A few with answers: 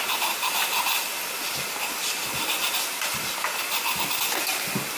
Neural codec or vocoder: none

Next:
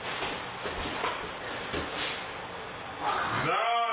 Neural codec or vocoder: none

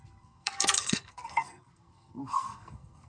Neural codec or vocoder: codec, SNAC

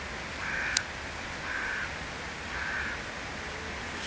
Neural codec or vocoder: none